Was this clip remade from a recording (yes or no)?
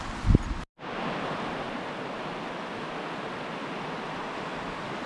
no